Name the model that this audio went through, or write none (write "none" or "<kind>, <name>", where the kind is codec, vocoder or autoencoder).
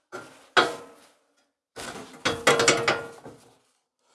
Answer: none